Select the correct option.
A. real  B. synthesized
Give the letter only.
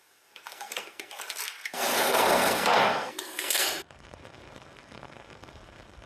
B